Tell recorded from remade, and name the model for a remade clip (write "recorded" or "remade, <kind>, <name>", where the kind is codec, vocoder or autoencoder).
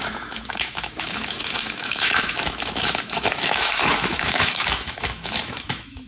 remade, autoencoder, DAC-VAE